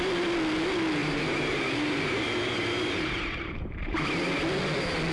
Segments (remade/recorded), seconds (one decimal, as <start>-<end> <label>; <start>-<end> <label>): 0.0-1.0 recorded; 1.0-4.1 remade; 4.1-5.1 recorded